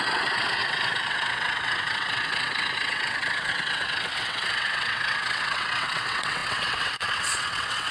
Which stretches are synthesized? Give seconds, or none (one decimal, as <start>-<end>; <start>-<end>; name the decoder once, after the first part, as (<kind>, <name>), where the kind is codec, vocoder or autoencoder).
0.0-7.9 (vocoder, WaveNeXt)